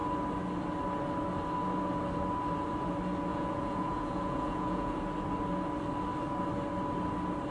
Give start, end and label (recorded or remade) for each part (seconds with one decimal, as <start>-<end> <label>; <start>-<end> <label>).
0.0-3.3 recorded; 3.3-5.0 remade; 5.0-7.5 recorded